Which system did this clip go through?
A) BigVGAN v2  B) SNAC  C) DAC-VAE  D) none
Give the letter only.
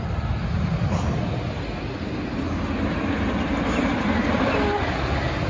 D